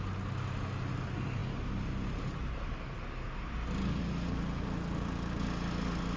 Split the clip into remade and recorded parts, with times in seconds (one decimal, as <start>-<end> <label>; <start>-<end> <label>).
0.0-6.2 recorded